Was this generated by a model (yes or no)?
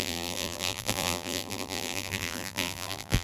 yes